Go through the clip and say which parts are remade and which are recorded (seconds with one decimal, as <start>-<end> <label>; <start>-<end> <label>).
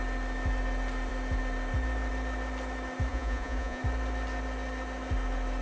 0.0-3.1 recorded; 3.1-3.8 remade; 3.8-5.6 recorded